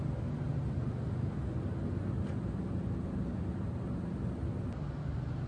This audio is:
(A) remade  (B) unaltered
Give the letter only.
B